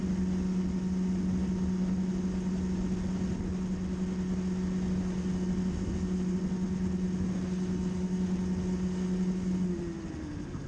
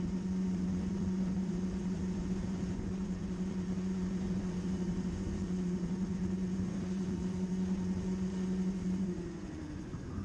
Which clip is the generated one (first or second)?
second